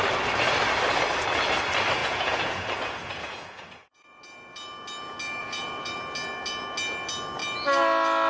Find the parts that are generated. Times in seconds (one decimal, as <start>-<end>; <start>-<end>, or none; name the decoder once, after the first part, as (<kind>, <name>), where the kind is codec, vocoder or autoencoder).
2.0-4.2 (vocoder, Vocos); 5.4-5.9